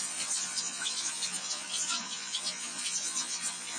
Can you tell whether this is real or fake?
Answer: fake